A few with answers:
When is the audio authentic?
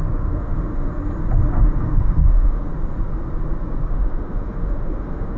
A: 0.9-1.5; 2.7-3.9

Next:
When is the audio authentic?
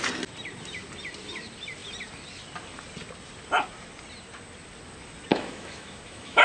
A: 0.0-5.3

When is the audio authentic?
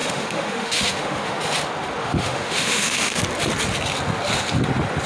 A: 1.4-2.0; 3.2-5.1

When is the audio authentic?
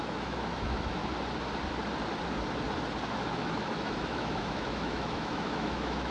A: 1.0-3.1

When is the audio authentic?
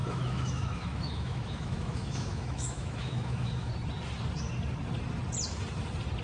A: 3.7-6.2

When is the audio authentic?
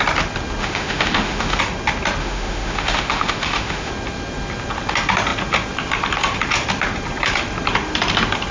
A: 0.0-0.6; 1.6-2.2; 3.9-8.5